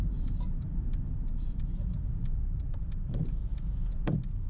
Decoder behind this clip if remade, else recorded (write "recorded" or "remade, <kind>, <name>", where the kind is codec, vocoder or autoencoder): remade, vocoder, BigVGAN v2